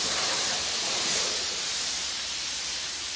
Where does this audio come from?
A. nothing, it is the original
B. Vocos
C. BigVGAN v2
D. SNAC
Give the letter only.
C